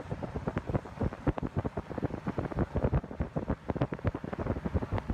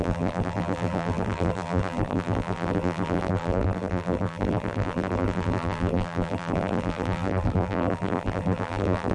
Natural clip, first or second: first